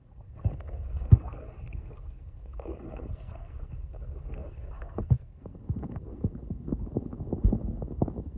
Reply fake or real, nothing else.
fake